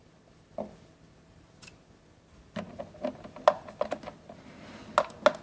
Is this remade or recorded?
recorded